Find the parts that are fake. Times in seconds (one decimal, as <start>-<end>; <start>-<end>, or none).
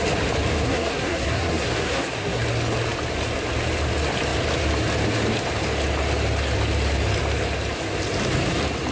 0.5-2.4